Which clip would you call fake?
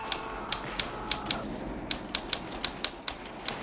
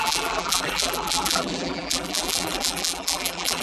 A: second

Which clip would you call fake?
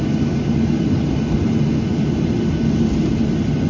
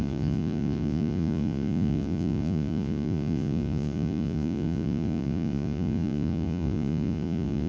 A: second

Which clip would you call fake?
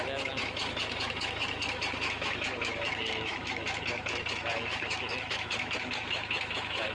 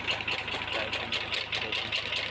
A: first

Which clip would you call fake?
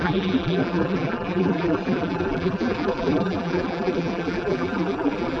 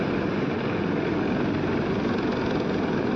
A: first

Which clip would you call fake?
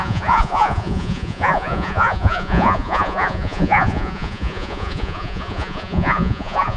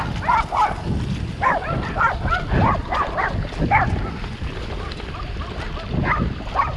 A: first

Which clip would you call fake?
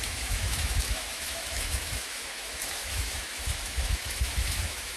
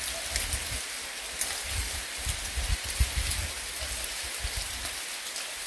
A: first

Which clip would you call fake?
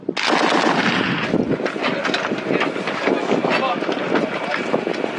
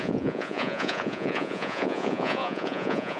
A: second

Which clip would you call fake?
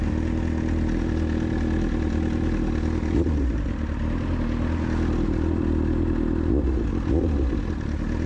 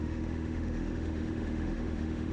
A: second